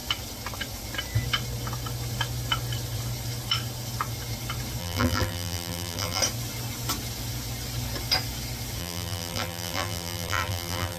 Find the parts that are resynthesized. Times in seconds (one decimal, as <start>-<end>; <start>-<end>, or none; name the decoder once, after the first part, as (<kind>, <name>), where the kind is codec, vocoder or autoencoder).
4.8-6.2 (vocoder, BigVGAN v2); 8.8-11.0